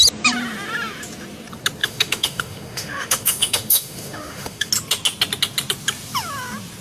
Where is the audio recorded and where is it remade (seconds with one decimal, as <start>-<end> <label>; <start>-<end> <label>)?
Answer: 0.0-1.8 recorded; 1.8-4.7 remade; 4.7-6.8 recorded